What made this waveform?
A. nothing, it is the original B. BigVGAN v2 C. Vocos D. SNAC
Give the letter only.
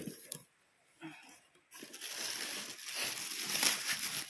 A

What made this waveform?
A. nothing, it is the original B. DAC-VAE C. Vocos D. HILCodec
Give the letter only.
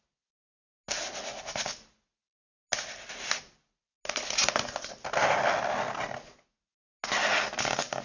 A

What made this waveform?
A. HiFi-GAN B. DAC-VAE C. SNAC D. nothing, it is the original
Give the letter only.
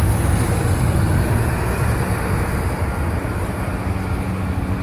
D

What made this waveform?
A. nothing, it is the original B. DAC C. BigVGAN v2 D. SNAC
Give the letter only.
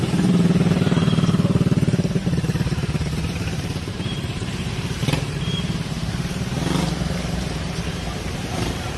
C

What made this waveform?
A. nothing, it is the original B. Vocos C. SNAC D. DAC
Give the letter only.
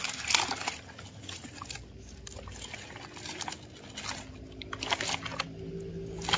A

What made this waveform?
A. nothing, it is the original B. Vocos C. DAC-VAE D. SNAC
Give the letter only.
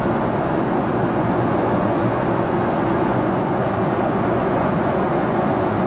B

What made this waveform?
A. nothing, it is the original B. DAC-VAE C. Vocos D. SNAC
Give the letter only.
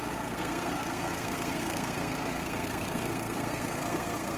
D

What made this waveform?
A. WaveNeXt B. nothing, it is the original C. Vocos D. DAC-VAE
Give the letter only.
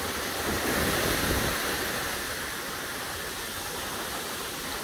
B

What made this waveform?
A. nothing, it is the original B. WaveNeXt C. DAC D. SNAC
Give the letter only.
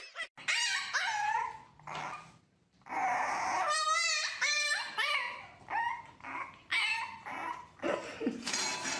A